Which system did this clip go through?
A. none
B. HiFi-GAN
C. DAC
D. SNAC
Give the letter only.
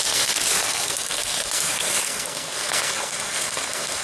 D